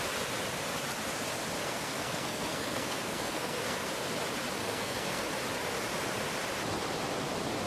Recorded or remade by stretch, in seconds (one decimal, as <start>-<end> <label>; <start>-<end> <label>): 0.0-1.6 recorded; 1.6-3.9 remade; 3.9-4.6 recorded; 4.6-5.2 remade; 5.2-7.7 recorded